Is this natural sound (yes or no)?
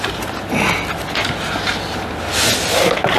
yes